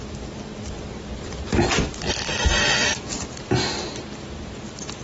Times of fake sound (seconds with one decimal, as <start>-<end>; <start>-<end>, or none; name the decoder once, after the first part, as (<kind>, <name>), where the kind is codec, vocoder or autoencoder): none